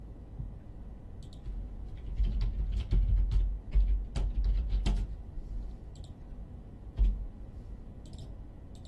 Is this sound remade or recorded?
recorded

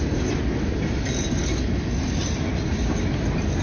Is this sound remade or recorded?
recorded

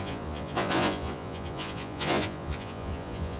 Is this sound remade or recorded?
remade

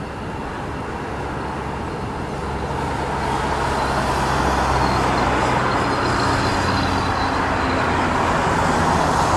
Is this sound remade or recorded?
recorded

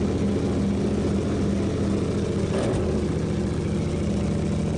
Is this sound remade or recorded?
recorded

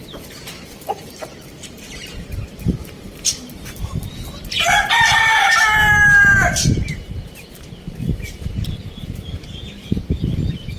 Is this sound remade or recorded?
remade